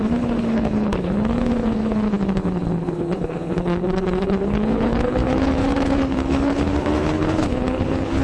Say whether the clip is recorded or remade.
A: remade